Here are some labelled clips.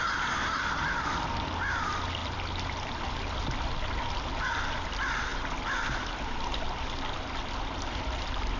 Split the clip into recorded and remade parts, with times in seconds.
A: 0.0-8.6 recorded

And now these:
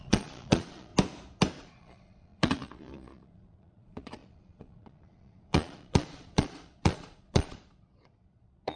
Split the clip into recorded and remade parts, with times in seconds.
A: 0.0-0.9 remade; 0.9-1.6 recorded; 1.6-8.8 remade

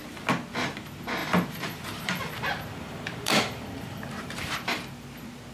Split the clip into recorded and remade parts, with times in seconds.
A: 0.0-1.2 recorded; 1.2-4.5 remade; 4.5-5.5 recorded

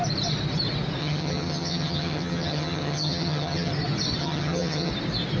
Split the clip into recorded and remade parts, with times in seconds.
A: 0.0-1.0 recorded; 1.0-3.7 remade; 3.7-4.2 recorded; 4.2-4.9 remade; 4.9-5.4 recorded

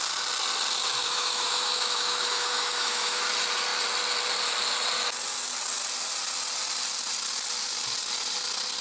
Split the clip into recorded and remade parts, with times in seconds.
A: 0.0-1.0 recorded; 1.0-3.2 remade; 3.2-8.8 recorded

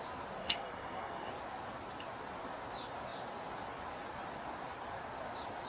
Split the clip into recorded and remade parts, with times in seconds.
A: 0.0-0.4 recorded; 0.4-1.3 remade; 1.3-5.7 recorded

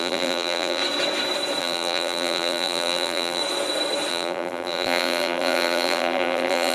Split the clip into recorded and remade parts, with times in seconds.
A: 0.0-0.8 remade; 0.8-1.6 recorded; 1.6-3.4 remade; 3.4-4.1 recorded; 4.1-6.7 remade

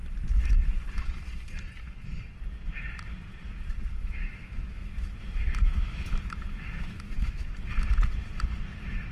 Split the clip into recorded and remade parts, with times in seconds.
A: 0.0-3.9 recorded; 3.9-7.5 remade; 7.5-9.1 recorded